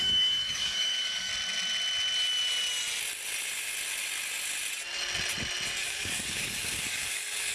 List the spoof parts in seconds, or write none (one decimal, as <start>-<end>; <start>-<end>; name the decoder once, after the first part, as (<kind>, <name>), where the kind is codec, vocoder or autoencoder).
0.0-1.3 (codec, DAC); 5.8-7.5